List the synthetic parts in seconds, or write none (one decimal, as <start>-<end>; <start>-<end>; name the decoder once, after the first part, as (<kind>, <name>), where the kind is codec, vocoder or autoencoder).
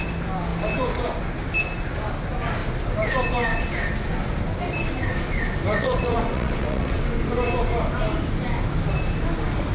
5.8-7.1 (vocoder, WaveNeXt)